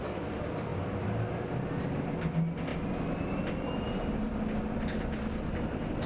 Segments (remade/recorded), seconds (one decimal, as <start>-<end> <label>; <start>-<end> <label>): 0.0-6.1 recorded